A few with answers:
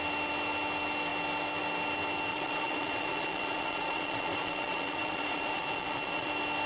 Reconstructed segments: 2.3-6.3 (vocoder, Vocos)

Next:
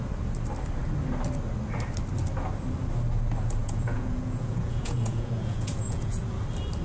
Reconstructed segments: 3.6-6.2 (vocoder, Vocos)

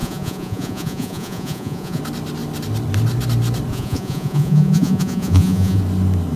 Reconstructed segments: 0.0-2.0 (vocoder, Vocos); 3.7-5.8

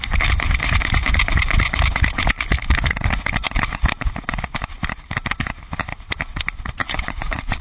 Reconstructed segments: 6.8-7.6 (vocoder, Vocos)